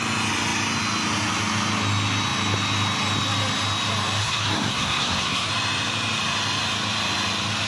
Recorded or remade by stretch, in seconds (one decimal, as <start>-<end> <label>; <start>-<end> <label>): 0.0-4.2 recorded; 4.2-5.5 remade; 5.5-7.7 recorded

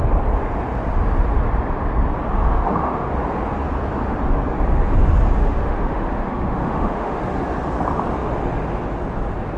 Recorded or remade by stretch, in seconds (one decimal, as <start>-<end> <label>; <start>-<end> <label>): 0.0-2.6 recorded; 2.6-3.1 remade; 3.1-5.4 recorded; 5.4-7.2 remade; 7.2-9.6 recorded

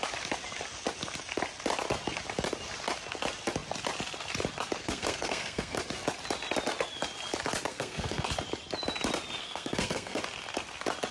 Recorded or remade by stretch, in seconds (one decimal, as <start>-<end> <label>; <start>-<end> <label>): 0.0-4.8 recorded; 4.8-5.8 remade; 5.8-7.7 recorded; 7.7-8.3 remade; 8.3-9.4 recorded; 9.4-10.2 remade; 10.2-11.1 recorded

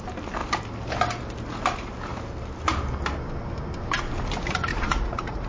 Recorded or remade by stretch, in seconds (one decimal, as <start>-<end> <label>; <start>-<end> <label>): 0.0-4.7 recorded; 4.7-5.5 remade

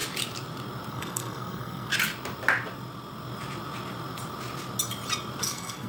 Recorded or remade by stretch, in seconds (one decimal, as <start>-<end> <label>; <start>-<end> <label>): 0.0-0.9 recorded; 0.9-1.9 remade; 1.9-5.4 recorded; 5.4-5.9 remade